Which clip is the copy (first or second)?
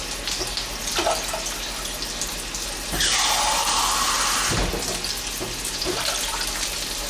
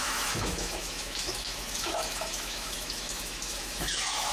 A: second